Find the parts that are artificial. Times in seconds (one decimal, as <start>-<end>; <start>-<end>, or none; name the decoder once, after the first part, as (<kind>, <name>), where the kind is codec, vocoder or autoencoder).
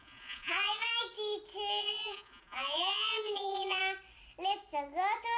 0.0-0.9 (vocoder, Vocos); 1.8-3.8